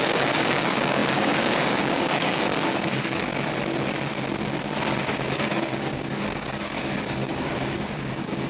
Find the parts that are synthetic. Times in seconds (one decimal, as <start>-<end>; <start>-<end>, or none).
0.0-3.3; 5.0-8.5